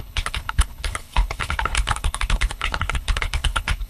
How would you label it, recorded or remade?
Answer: remade